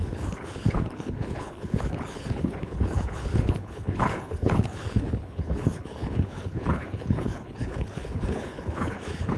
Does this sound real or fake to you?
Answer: fake